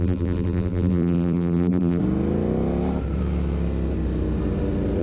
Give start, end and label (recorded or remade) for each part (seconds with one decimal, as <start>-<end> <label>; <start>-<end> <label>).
0.0-2.0 remade; 2.0-5.0 recorded

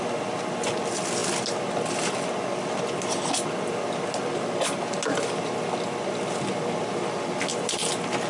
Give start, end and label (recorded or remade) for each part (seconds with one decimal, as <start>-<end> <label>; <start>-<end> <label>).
0.0-8.3 recorded

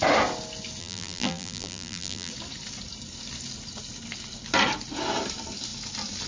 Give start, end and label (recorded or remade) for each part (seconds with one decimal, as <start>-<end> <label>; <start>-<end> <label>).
0.0-0.8 recorded; 0.8-2.3 remade; 2.3-6.3 recorded